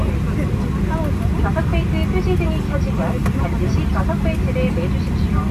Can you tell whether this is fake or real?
real